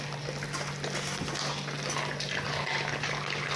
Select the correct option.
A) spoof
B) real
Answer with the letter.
B